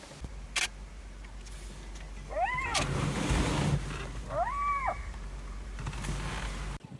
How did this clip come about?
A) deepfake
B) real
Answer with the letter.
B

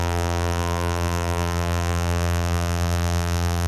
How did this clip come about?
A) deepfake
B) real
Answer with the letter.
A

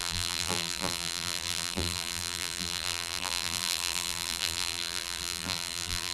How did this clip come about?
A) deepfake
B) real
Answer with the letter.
A